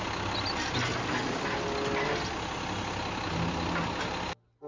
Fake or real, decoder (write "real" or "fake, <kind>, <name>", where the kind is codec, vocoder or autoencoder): real